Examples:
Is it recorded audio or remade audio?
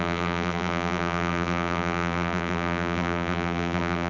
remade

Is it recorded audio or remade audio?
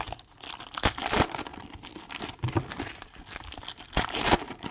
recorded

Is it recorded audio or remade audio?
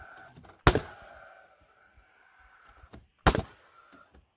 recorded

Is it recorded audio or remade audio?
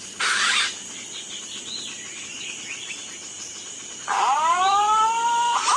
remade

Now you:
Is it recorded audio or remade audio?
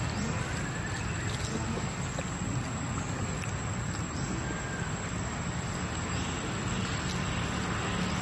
recorded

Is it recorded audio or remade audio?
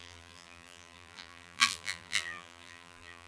remade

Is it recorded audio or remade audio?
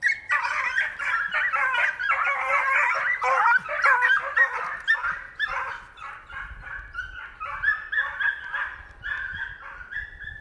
recorded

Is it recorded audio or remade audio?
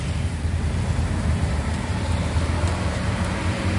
remade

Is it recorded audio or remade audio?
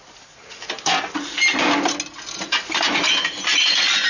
recorded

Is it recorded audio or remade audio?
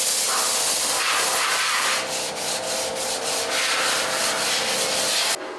recorded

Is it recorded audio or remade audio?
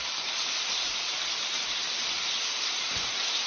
remade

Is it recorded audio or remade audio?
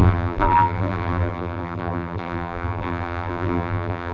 remade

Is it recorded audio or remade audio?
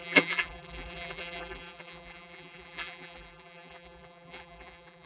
remade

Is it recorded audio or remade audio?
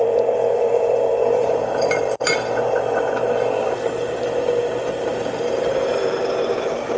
remade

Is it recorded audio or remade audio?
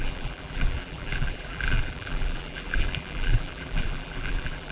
remade